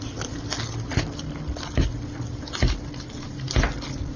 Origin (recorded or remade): recorded